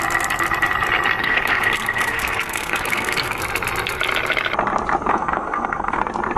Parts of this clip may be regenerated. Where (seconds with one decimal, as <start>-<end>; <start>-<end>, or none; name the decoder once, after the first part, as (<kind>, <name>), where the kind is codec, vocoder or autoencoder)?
1.2-3.4 (codec, SNAC); 5.1-6.0